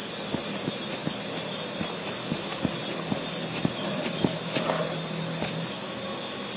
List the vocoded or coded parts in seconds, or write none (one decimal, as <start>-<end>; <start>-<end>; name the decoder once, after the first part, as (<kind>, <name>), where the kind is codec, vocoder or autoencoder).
none